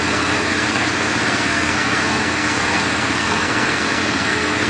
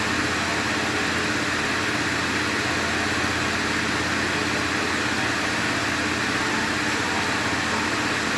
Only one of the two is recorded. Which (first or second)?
second